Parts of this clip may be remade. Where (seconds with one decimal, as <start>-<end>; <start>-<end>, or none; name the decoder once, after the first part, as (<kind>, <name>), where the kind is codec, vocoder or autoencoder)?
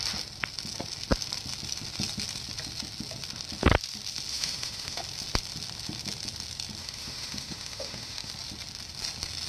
4.3-5.0 (autoencoder, DAC-VAE); 6.8-8.3